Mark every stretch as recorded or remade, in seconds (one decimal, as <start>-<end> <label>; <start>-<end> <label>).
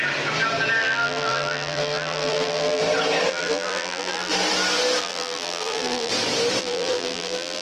0.0-0.8 recorded; 0.8-2.8 remade; 2.8-3.3 recorded; 3.3-4.3 remade; 4.3-5.0 recorded; 5.0-6.1 remade; 6.1-6.6 recorded; 6.6-7.6 remade